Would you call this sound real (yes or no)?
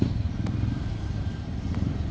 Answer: yes